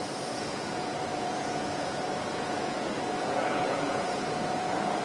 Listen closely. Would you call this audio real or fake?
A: fake